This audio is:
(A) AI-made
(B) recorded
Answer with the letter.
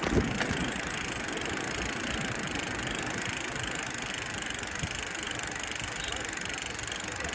B